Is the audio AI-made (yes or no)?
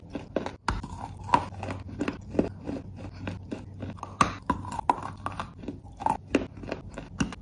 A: no